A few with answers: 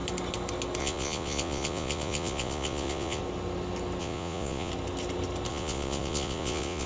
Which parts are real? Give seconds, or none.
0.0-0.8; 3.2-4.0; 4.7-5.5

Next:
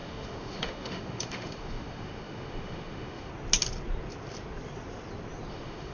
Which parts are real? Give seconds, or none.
3.3-5.5

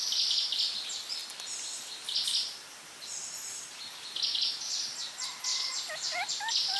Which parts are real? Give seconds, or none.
0.0-6.8

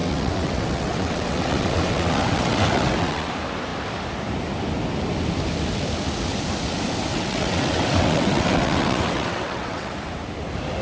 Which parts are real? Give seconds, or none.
3.3-7.1; 9.9-10.8

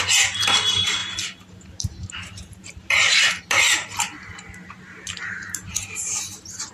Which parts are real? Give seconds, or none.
none

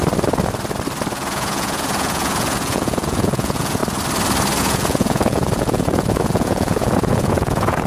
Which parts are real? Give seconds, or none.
0.0-1.1; 3.8-4.6

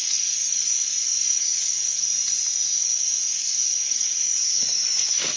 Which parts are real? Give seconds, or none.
2.1-2.8

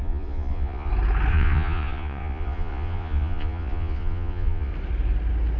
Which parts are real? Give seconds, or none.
0.9-1.3; 4.7-5.6